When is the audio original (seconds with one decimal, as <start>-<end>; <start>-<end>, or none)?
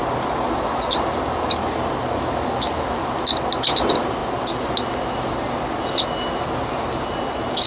0.0-7.7